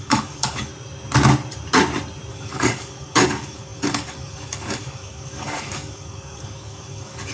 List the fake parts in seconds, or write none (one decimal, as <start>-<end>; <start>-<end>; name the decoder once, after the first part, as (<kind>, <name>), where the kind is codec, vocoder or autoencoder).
0.0-0.7 (codec, DAC); 2.3-7.3